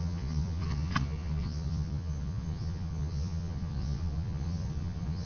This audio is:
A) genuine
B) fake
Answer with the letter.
B